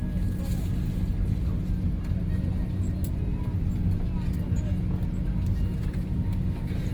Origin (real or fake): real